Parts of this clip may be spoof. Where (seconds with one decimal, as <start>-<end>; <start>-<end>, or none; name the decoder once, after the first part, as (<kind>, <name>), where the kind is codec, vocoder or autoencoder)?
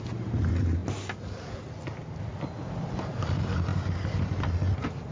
none